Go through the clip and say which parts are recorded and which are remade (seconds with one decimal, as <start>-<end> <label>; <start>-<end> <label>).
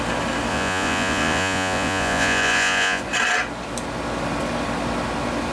0.0-0.5 recorded; 0.5-3.0 remade; 3.0-5.5 recorded